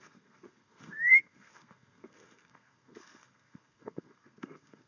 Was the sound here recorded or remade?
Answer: remade